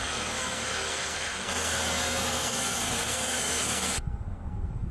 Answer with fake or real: fake